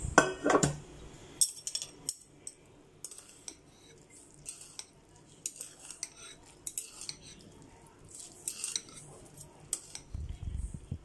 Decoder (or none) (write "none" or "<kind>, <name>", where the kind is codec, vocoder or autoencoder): none